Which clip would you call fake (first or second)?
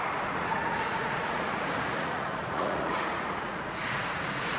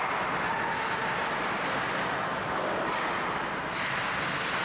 first